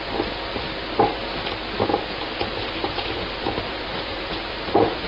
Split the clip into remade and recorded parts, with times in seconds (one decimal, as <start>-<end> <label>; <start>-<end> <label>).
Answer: 0.0-2.6 recorded; 2.6-5.1 remade